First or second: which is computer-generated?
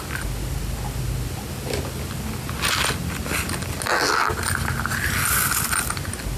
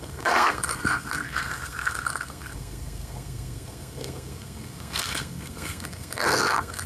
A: second